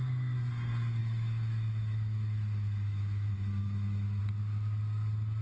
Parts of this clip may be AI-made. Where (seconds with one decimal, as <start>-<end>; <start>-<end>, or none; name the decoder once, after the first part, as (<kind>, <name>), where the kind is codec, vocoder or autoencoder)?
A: 1.0-4.2 (autoencoder, DAC-VAE)